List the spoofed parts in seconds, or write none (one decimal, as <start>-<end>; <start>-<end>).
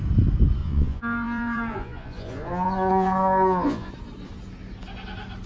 0.6-3.9